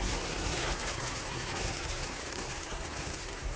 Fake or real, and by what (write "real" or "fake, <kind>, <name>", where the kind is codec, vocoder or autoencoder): fake, codec, SNAC